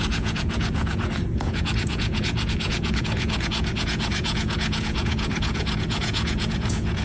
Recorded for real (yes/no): no